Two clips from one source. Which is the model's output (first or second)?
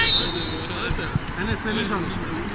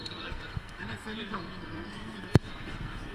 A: second